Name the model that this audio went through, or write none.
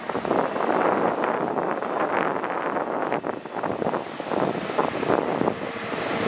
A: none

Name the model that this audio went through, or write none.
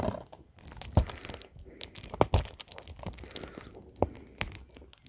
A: none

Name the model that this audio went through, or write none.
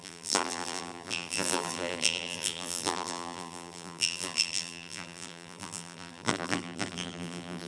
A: vocoder, BigVGAN v2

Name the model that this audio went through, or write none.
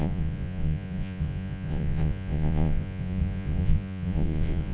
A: vocoder, Vocos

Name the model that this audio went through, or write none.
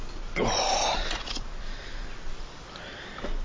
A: none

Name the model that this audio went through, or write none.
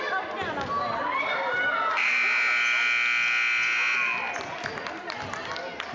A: none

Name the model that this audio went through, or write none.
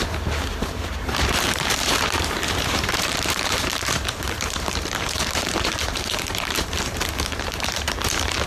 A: vocoder, BigVGAN v2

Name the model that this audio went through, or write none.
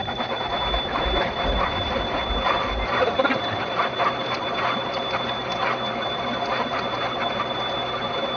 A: none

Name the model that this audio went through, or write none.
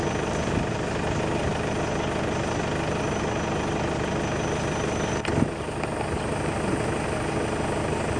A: none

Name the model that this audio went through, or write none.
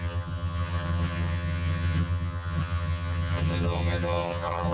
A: vocoder, HiFi-GAN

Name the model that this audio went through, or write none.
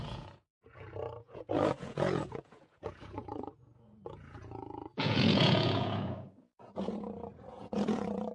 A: vocoder, Vocos